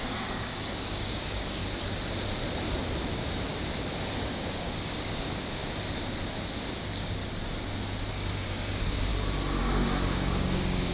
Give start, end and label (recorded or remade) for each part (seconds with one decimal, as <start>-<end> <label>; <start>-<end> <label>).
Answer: 0.0-1.6 remade; 1.6-4.2 recorded; 4.2-5.6 remade; 5.6-6.8 recorded; 6.8-7.2 remade; 7.2-8.1 recorded; 8.1-9.1 remade; 9.1-9.6 recorded; 9.6-10.9 remade